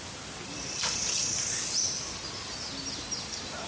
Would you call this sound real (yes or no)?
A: yes